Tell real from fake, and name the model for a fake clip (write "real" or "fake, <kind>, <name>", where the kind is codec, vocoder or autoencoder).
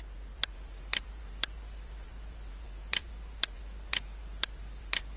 fake, vocoder, BigVGAN v2